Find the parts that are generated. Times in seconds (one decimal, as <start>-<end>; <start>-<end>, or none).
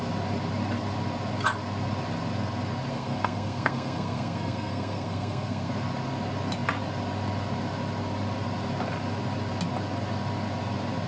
2.9-5.7